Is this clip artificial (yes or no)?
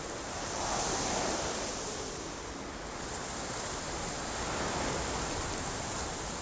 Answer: no